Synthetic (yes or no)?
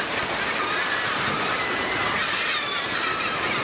no